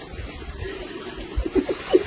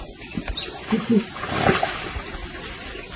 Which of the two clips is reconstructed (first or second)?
first